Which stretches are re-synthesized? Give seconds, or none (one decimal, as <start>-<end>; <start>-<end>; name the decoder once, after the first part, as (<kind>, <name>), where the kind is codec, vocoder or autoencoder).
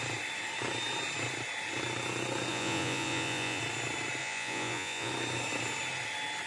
2.5-3.6 (vocoder, Vocos); 4.2-5.1